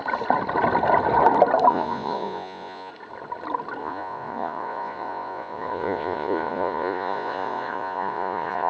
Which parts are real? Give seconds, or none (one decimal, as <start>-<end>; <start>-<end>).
0.0-1.7; 2.9-3.8